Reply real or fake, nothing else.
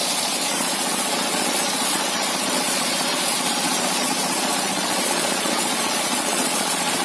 fake